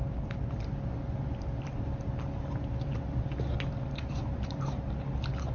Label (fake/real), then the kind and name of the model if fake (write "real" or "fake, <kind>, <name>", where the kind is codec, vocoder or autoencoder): fake, vocoder, BigVGAN v2